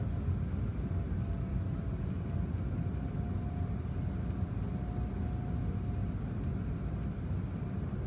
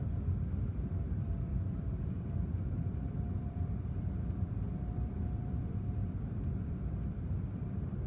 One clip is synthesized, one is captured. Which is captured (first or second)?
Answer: first